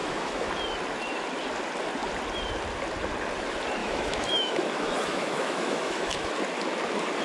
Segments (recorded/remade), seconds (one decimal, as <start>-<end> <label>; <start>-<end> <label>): 0.0-0.5 remade; 0.5-3.8 recorded; 3.8-6.3 remade; 6.3-7.2 recorded